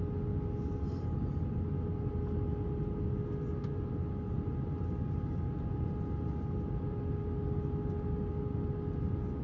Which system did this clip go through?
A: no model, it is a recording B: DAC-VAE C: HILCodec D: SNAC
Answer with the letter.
A